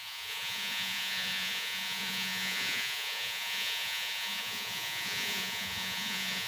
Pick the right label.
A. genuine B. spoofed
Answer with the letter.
B